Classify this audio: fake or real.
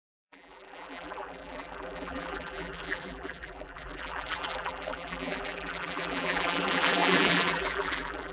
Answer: fake